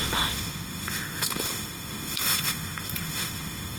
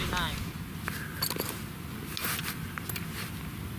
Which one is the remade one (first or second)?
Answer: first